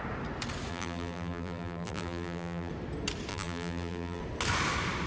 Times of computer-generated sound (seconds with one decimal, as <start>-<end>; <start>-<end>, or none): 0.7-2.7; 3.3-4.2